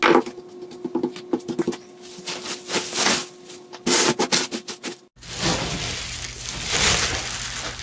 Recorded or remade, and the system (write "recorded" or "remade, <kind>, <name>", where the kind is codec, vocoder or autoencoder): recorded